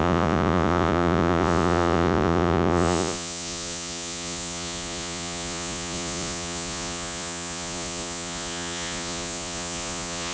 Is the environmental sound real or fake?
fake